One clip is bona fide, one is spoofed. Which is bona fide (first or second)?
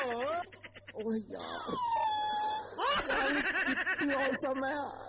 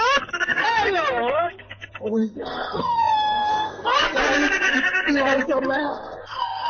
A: first